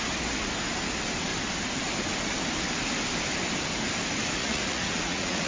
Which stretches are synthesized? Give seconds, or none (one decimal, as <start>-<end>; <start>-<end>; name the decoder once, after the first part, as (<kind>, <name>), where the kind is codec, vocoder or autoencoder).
4.4-5.5 (vocoder, Vocos)